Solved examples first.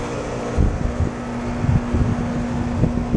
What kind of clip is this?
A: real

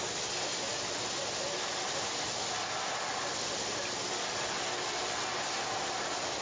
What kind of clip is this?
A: real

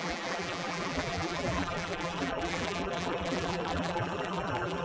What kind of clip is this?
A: fake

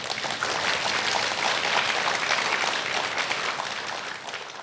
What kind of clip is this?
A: real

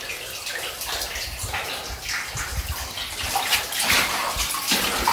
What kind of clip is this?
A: real